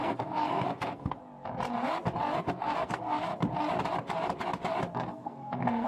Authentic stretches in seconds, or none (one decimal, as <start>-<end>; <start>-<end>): 1.2-2.4; 3.3-5.1